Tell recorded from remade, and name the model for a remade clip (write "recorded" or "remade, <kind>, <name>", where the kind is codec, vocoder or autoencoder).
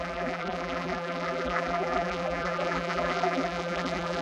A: remade, vocoder, BigVGAN v2